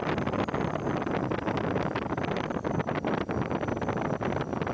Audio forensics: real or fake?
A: real